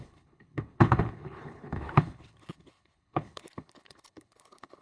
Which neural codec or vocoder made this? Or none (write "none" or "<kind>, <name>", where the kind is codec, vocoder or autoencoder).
codec, HILCodec